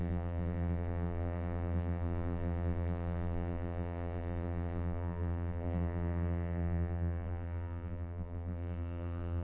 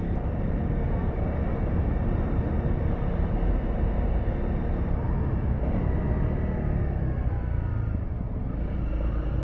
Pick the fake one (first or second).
first